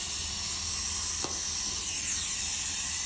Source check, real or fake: real